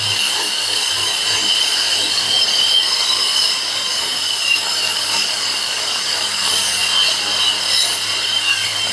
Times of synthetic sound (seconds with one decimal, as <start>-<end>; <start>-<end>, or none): 0.0-1.1; 1.6-6.8; 8.2-8.9

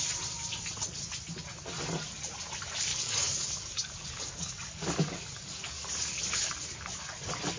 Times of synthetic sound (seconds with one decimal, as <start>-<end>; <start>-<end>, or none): 2.9-6.5

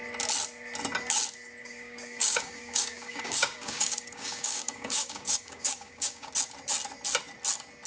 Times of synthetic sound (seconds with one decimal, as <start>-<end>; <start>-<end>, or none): 1.6-6.3

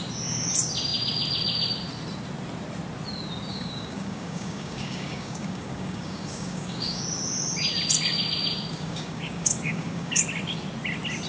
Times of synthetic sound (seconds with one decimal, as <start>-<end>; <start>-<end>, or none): 3.5-7.0; 8.7-10.2

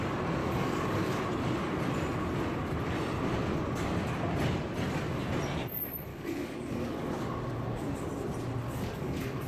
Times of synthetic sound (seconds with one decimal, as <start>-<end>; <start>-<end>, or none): 0.4-1.2; 6.1-8.1; 8.6-9.5

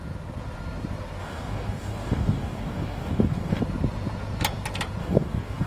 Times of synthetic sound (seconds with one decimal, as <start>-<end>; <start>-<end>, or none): 1.2-3.6; 5.0-5.7

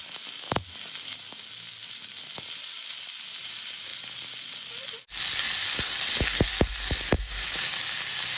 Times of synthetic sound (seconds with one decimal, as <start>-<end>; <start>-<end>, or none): none